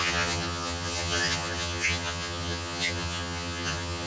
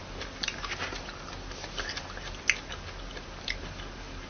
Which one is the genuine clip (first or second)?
second